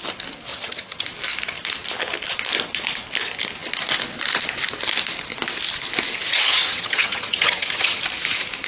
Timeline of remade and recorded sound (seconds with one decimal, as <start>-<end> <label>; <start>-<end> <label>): 0.0-0.5 recorded; 0.5-1.0 remade; 1.0-6.2 recorded; 6.2-8.0 remade; 8.0-8.7 recorded